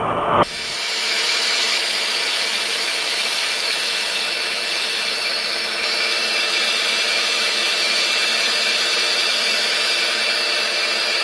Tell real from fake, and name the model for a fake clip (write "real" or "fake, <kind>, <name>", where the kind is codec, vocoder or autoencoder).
fake, autoencoder, DAC-VAE